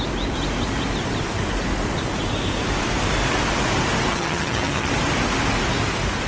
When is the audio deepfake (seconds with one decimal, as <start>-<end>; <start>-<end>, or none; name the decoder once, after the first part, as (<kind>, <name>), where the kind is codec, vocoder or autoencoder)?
4.1-4.9 (vocoder, HiFi-GAN)